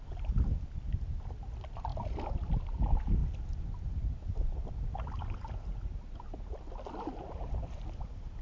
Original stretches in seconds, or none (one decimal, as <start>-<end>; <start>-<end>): 0.0-8.4